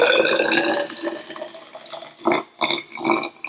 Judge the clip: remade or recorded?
recorded